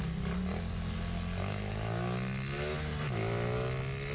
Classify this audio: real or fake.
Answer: real